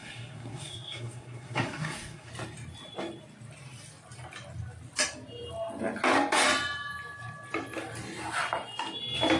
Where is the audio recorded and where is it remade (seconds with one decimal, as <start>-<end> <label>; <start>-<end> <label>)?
0.0-2.3 remade; 2.3-9.4 recorded